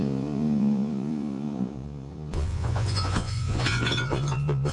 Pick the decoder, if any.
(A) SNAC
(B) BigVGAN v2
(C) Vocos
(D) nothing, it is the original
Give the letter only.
C